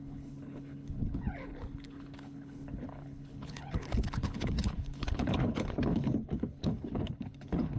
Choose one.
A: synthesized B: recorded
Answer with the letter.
A